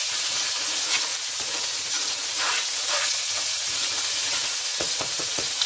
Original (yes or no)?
no